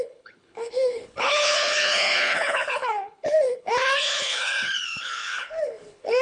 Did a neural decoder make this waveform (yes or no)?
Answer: yes